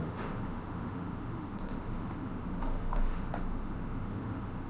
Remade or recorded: remade